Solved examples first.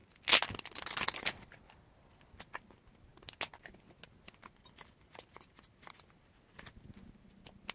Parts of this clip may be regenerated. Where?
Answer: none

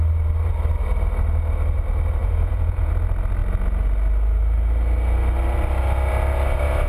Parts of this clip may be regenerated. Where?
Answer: 2.2-2.9

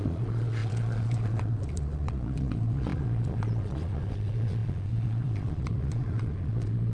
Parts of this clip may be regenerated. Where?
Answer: 0.0-6.9

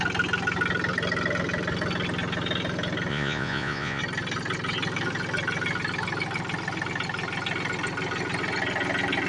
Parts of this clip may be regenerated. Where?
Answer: 3.1-4.0

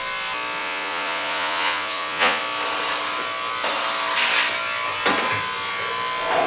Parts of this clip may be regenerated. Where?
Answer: 0.6-2.4

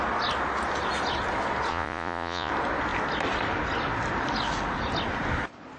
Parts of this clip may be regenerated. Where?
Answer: 1.7-2.5

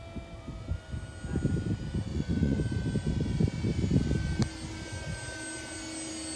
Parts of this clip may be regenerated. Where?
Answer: 2.1-2.6

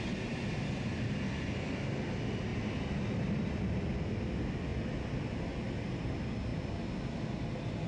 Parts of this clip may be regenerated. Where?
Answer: none